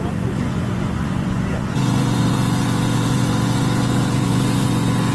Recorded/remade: remade